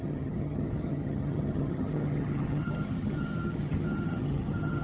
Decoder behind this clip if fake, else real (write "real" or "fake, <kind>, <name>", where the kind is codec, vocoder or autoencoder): fake, vocoder, HiFi-GAN